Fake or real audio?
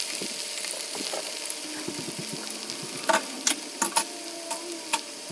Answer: real